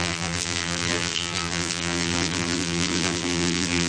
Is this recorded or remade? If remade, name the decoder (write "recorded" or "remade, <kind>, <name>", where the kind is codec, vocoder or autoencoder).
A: remade, vocoder, BigVGAN v2